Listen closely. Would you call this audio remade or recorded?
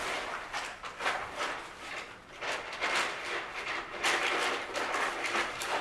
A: recorded